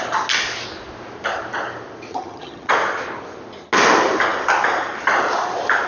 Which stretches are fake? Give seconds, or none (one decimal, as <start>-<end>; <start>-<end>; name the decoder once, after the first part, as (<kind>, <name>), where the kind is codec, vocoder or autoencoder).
2.1-2.7 (vocoder, HiFi-GAN)